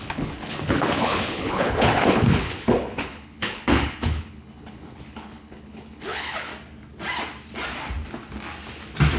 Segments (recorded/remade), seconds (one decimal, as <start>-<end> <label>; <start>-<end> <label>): 0.0-6.5 remade; 6.5-9.2 recorded